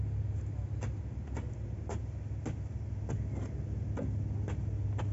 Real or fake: real